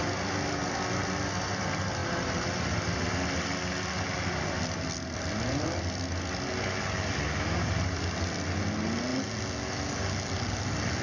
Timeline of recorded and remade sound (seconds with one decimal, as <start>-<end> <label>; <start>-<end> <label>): 0.0-11.0 recorded